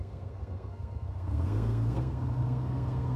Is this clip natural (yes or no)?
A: no